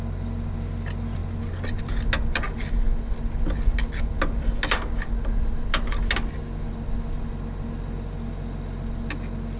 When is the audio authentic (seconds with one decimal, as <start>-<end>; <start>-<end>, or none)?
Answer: 0.0-9.6